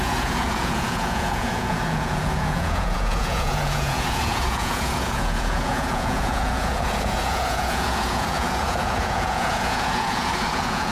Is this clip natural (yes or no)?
no